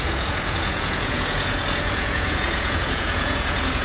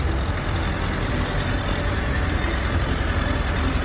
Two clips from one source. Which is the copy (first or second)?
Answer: first